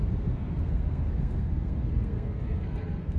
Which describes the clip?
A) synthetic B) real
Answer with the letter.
A